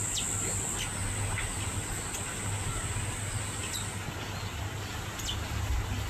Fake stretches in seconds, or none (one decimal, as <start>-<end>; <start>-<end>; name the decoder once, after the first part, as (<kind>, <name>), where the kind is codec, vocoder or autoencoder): none

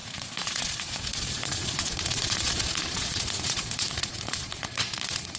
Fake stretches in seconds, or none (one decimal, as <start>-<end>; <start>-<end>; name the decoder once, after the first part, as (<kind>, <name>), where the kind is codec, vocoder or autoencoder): 0.0-5.4 (vocoder, Vocos)

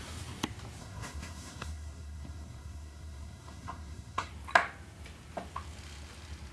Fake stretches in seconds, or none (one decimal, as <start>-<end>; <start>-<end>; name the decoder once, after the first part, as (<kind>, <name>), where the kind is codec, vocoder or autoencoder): 0.8-4.3 (codec, SNAC)

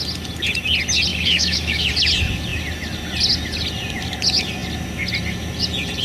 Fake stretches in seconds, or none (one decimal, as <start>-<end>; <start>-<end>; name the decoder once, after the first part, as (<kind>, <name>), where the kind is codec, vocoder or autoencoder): 1.1-1.9 (autoencoder, DAC-VAE)

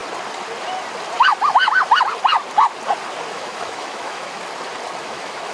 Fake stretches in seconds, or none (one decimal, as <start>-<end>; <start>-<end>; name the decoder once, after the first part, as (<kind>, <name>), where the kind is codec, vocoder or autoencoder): 3.3-4.4 (autoencoder, DAC-VAE); 5.0-5.5

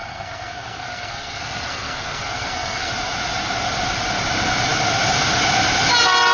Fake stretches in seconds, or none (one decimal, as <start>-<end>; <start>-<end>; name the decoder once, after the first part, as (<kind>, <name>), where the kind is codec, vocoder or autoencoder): 0.0-2.9 (codec, SNAC)